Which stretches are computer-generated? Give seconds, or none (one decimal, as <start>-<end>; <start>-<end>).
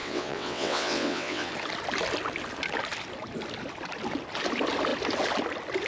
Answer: 0.0-1.5